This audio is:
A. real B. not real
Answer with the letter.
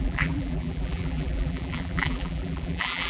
B